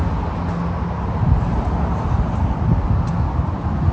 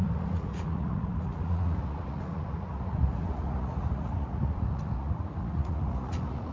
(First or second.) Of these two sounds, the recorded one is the first